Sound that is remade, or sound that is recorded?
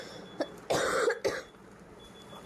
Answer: recorded